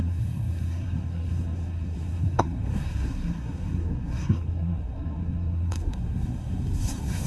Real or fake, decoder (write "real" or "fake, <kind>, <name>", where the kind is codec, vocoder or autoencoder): fake, codec, SNAC